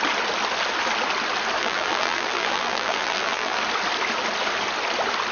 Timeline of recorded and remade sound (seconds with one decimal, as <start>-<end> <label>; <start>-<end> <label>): 0.0-1.6 recorded; 1.6-3.6 remade; 3.6-5.3 recorded